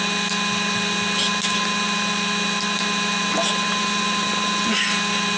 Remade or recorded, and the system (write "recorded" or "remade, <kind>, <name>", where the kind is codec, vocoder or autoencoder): recorded